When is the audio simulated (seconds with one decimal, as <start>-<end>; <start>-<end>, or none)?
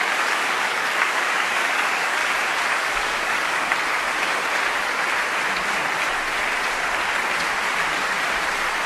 0.0-2.2; 2.7-3.7